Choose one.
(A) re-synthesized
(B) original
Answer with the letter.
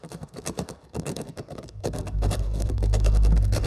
A